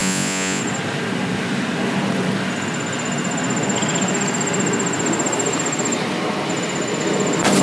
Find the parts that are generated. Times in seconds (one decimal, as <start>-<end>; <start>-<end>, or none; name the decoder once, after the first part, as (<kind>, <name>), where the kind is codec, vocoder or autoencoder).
0.0-0.6 (vocoder, Vocos)